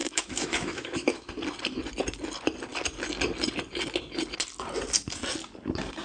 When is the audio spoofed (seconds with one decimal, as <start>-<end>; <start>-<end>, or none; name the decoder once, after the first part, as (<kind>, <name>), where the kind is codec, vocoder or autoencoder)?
0.0-1.3 (autoencoder, DAC-VAE)